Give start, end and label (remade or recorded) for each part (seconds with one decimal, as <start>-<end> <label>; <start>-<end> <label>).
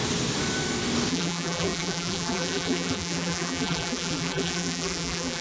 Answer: 0.0-1.1 recorded; 1.1-5.4 remade